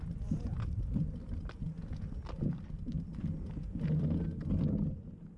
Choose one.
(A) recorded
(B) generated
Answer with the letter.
A